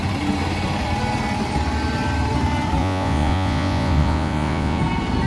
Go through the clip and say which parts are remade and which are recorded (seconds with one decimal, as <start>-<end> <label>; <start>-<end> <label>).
0.0-2.8 recorded; 2.8-4.8 remade; 4.8-5.3 recorded